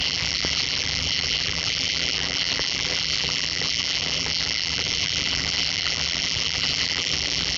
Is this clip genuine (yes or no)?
no